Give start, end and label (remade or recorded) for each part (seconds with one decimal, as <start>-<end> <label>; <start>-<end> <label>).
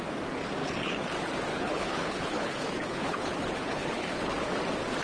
0.0-0.6 recorded; 0.6-1.1 remade; 1.1-1.5 recorded; 1.5-4.5 remade; 4.5-5.0 recorded